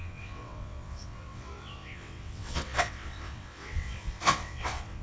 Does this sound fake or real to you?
fake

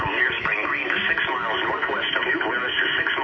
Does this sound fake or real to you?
real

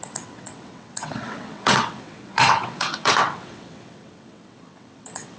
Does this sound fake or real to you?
fake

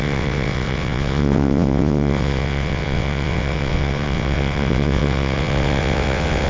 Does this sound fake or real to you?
fake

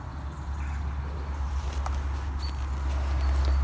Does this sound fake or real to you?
real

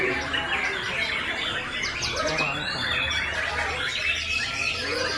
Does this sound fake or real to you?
real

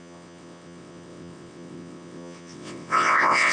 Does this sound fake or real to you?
fake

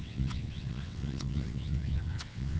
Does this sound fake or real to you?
fake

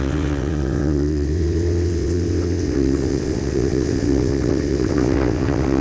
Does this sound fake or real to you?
fake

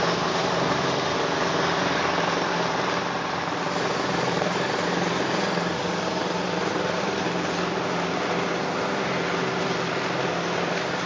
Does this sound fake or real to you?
real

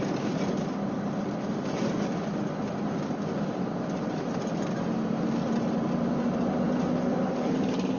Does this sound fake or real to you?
real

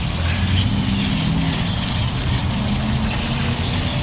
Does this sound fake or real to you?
real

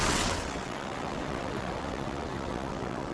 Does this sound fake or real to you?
fake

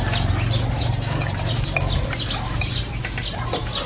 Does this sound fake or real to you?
real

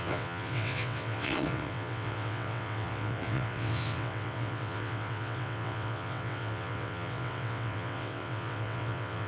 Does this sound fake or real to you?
fake